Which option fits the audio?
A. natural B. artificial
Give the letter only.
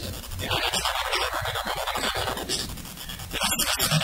A